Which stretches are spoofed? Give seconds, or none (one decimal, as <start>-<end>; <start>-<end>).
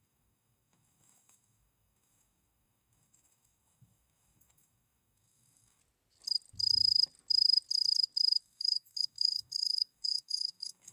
0.0-5.8; 8.4-10.9